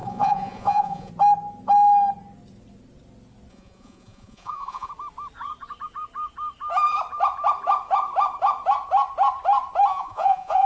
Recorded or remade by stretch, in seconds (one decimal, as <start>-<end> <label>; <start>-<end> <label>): 0.0-1.1 remade; 1.1-3.5 recorded; 3.5-4.9 remade; 4.9-9.9 recorded; 9.9-10.7 remade